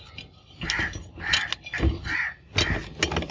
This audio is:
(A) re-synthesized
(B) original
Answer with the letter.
B